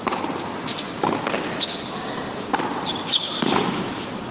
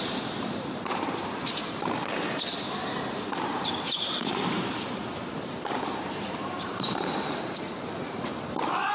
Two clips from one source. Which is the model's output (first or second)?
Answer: second